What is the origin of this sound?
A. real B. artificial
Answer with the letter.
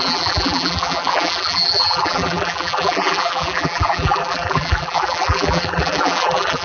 B